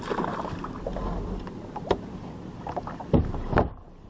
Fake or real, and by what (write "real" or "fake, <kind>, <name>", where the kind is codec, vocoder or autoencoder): real